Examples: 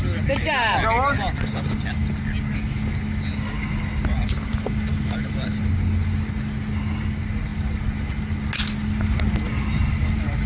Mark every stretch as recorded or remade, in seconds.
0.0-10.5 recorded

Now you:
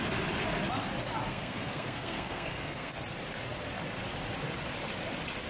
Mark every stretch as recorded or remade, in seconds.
0.0-1.3 recorded; 1.3-2.9 remade; 2.9-5.5 recorded